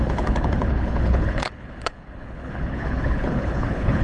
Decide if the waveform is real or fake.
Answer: fake